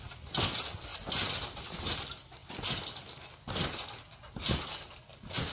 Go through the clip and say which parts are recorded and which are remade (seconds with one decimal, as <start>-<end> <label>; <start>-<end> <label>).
0.0-5.5 recorded